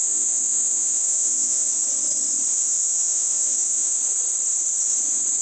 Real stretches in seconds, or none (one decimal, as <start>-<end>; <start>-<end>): 1.8-2.5; 4.0-5.4